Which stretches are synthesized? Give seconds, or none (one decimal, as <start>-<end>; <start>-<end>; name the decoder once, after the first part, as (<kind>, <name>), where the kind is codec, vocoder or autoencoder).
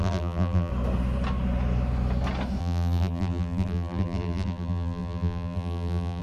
0.0-0.7 (vocoder, BigVGAN v2); 2.6-6.2